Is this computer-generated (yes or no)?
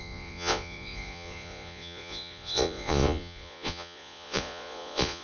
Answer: yes